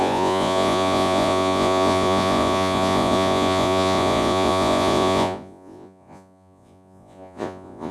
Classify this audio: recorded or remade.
remade